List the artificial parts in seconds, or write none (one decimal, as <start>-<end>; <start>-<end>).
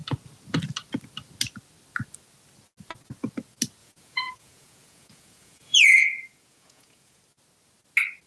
3.8-7.2